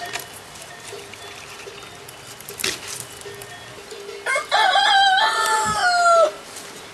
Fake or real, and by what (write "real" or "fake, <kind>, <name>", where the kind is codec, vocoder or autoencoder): real